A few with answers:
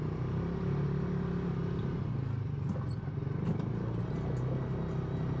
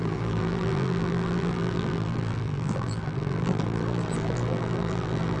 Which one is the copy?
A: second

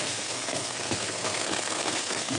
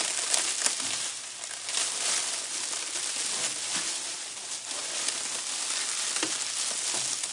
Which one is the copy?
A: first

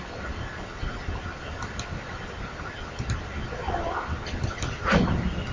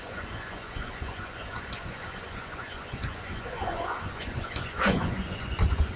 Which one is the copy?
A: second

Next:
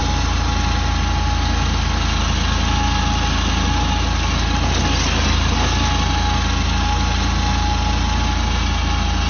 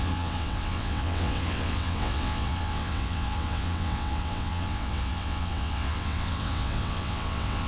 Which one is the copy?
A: second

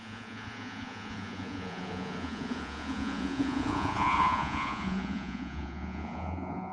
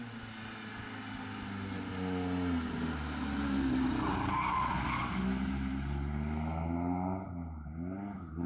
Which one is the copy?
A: first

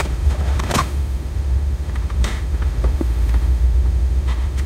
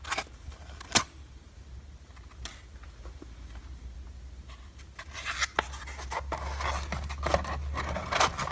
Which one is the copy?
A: first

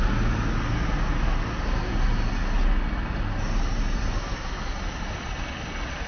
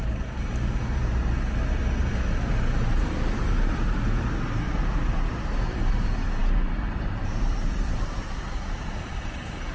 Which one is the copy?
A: second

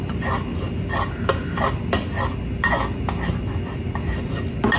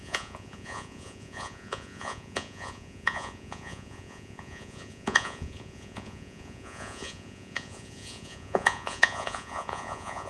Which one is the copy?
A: second